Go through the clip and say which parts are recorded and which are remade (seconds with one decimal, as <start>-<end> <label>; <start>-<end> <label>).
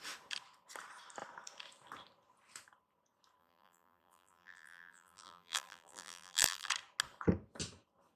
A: 0.0-3.4 recorded; 3.4-6.7 remade; 6.7-8.2 recorded